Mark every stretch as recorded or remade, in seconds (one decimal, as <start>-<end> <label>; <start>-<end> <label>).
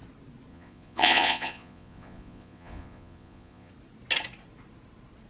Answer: 0.0-0.5 recorded; 0.5-3.7 remade; 3.7-5.3 recorded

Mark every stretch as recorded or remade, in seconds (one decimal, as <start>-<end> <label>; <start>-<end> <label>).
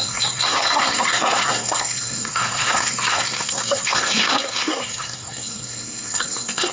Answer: 0.0-6.7 remade